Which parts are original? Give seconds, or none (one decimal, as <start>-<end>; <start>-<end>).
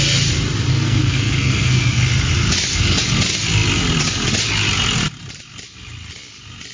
0.0-0.7; 2.0-6.7